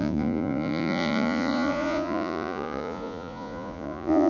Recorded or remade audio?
remade